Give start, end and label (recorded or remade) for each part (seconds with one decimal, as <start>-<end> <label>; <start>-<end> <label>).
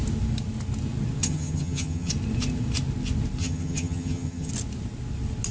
0.0-1.2 recorded; 1.2-2.1 remade; 2.1-3.4 recorded; 3.4-4.5 remade; 4.5-5.5 recorded